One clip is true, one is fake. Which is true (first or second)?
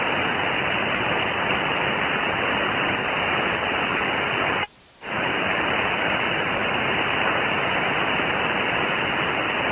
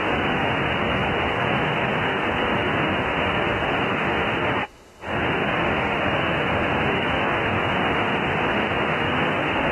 first